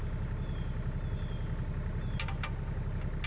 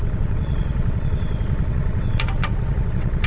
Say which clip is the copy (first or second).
second